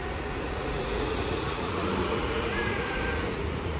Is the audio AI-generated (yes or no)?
yes